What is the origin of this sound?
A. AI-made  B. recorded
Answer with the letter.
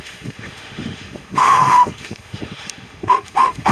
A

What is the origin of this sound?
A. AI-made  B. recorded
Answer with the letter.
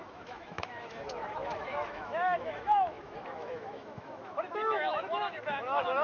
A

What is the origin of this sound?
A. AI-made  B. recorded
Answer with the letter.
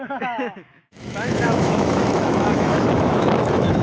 A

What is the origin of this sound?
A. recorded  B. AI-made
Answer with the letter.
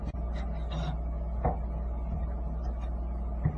A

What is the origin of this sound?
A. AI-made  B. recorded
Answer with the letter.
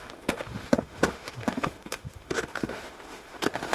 A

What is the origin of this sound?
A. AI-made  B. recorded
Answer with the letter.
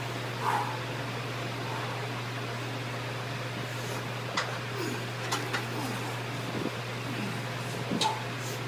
B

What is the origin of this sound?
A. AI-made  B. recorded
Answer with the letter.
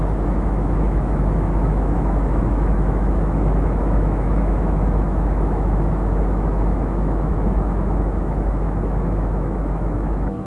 A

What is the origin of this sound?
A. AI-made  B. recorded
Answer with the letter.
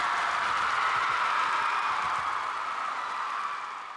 B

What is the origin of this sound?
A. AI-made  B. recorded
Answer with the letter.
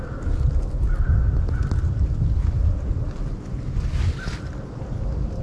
B